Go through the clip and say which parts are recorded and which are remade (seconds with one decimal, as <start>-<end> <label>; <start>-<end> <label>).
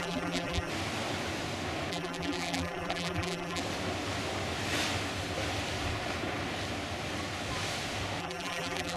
0.0-0.7 remade; 0.7-1.9 recorded; 1.9-3.6 remade; 3.6-8.2 recorded; 8.2-9.0 remade